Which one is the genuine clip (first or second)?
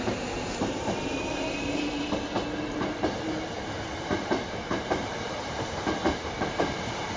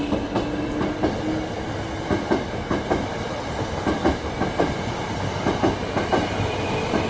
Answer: second